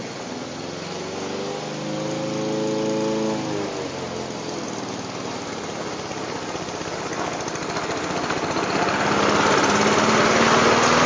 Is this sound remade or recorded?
recorded